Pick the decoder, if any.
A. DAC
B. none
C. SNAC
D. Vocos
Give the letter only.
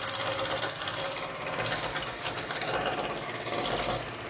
B